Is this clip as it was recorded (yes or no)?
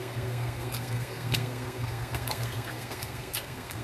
no